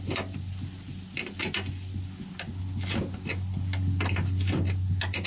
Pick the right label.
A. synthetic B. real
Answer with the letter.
B